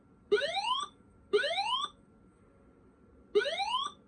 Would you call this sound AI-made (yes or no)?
no